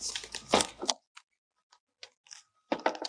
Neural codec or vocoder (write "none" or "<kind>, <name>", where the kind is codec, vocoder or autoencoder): none